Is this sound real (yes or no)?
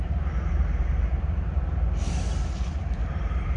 no